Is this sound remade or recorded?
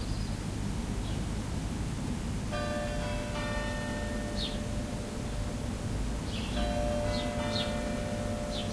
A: recorded